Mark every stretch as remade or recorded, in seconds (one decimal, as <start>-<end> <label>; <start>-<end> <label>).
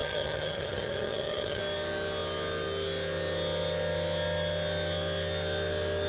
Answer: 0.0-1.6 remade; 1.6-6.1 recorded